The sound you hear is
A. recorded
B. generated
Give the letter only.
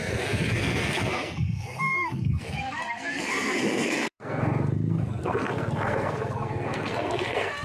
B